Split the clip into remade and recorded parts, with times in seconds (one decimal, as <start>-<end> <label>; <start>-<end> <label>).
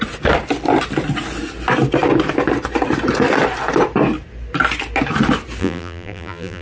0.0-5.6 recorded; 5.6-6.6 remade